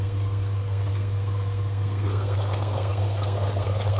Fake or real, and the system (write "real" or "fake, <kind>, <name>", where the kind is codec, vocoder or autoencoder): fake, codec, SNAC